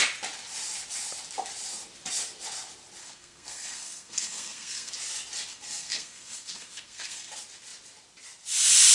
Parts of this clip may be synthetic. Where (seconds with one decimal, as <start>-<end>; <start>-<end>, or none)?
3.0-4.9; 5.5-7.3